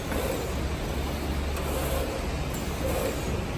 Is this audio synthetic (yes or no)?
no